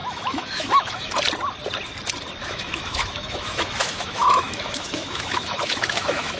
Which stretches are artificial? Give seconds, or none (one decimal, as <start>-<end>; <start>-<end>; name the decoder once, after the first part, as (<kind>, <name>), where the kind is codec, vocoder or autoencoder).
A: 0.0-1.1 (autoencoder, DAC-VAE); 2.4-6.4